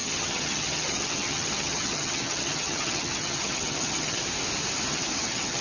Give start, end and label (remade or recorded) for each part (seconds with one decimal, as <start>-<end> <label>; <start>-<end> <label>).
0.0-4.2 remade; 4.2-4.9 recorded; 4.9-5.6 remade